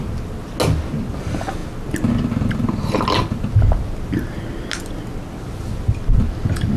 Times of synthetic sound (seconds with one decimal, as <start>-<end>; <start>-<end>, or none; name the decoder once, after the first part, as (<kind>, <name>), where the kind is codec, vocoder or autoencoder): none